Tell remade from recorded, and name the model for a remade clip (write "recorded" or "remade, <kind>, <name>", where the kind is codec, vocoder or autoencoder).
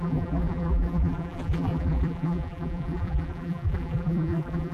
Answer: remade, vocoder, BigVGAN v2